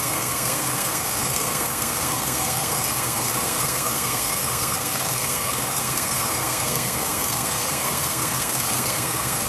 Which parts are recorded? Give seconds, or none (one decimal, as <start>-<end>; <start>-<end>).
none